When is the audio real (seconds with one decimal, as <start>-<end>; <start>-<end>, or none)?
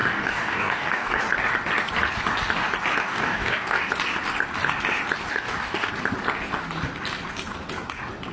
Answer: 1.2-3.0; 3.9-5.3; 5.9-8.3